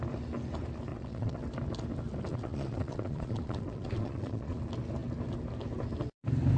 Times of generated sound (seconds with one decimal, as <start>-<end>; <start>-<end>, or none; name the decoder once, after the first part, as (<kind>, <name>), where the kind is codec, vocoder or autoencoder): 0.9-1.4 (vocoder, Vocos); 2.3-4.6